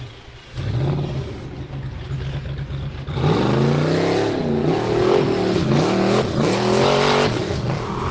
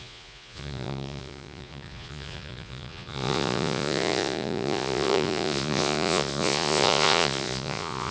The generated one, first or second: second